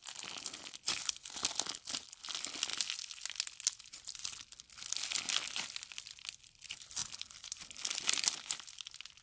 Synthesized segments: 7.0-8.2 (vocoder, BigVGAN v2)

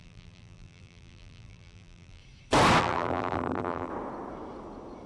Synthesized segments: 0.0-2.2 (vocoder, BigVGAN v2); 2.8-3.9

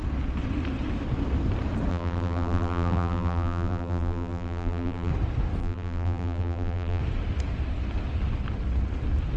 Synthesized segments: 1.9-5.1 (vocoder, BigVGAN v2); 5.6-7.0